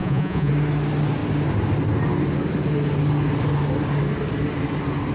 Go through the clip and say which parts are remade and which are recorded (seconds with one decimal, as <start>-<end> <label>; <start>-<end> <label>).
0.0-0.5 remade; 0.5-5.1 recorded